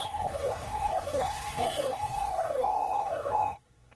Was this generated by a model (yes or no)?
yes